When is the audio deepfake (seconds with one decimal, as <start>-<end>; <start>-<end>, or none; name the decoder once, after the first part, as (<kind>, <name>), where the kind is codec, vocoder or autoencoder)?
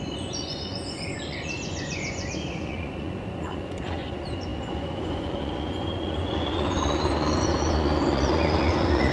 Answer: 0.0-9.1 (vocoder, Vocos)